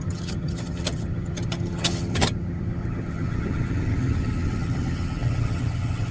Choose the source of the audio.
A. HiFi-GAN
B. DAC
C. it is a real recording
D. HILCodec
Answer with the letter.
A